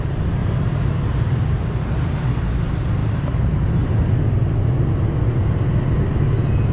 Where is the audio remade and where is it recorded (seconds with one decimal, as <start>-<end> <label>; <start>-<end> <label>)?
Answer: 0.0-0.4 recorded; 0.4-0.9 remade; 0.9-3.0 recorded; 3.0-4.2 remade; 4.2-6.7 recorded